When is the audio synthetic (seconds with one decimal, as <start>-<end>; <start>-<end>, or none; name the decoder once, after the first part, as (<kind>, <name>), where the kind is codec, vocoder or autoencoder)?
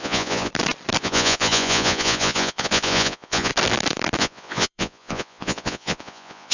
0.0-0.5 (vocoder, Vocos); 1.0-3.5; 4.2-6.5